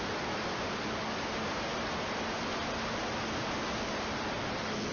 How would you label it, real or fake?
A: real